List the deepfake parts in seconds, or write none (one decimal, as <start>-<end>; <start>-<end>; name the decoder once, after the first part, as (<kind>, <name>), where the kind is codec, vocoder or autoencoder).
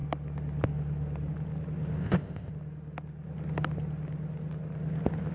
2.0-2.5 (codec, ZipCodec)